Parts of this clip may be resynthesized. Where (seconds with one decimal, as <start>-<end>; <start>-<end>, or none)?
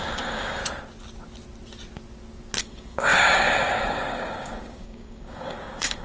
0.0-0.6; 2.6-6.0